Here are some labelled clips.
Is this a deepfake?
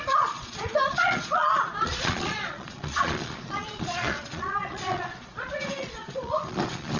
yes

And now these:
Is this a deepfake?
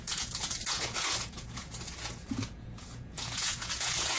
yes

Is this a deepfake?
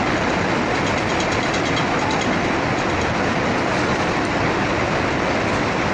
no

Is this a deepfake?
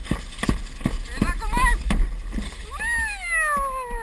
no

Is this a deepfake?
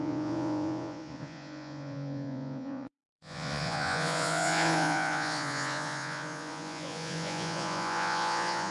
yes